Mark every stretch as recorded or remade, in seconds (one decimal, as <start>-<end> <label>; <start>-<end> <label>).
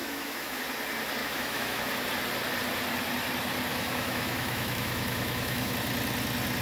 0.0-0.6 remade; 0.6-1.2 recorded; 1.2-1.9 remade; 1.9-3.7 recorded; 3.7-5.7 remade; 5.7-6.6 recorded